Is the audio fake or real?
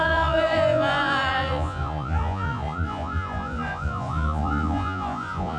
fake